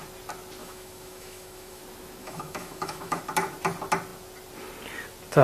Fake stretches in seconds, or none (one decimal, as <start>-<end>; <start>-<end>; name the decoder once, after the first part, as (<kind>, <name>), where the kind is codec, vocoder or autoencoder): 0.6-1.8 (autoencoder, DAC-VAE); 2.2-3.2